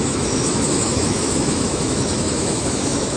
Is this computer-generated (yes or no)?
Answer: yes